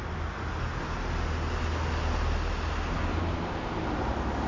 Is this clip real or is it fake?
real